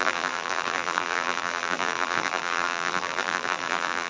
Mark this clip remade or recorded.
remade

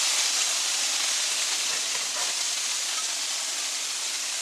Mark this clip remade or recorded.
recorded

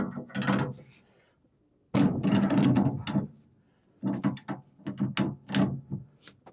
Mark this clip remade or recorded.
recorded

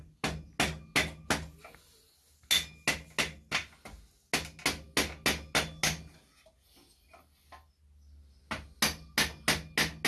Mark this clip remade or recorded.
recorded